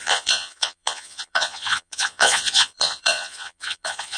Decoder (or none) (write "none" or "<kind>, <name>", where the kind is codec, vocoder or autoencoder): vocoder, Vocos